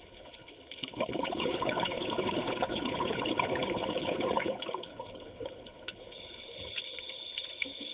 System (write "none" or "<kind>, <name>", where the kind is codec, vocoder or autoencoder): codec, HILCodec